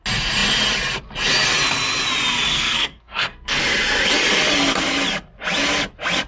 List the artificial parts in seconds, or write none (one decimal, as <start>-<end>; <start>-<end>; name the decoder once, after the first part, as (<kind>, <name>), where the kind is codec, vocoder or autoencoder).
2.5-3.6 (codec, SNAC)